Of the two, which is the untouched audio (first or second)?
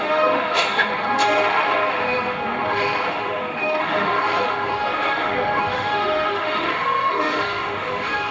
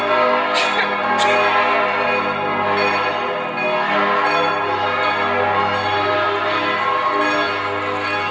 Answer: second